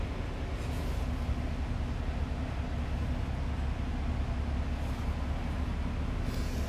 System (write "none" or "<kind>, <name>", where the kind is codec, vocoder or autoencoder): none